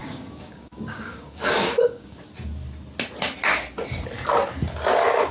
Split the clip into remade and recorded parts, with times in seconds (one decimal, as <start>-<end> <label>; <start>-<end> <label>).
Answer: 0.0-2.3 remade; 2.3-5.3 recorded